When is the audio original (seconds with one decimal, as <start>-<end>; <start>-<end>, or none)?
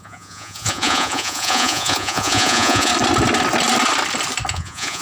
2.9-4.5